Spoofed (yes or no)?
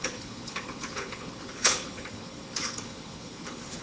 yes